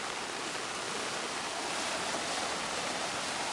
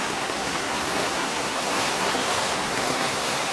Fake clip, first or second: second